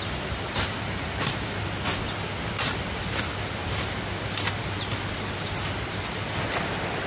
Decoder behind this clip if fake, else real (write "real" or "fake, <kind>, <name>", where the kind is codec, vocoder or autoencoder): real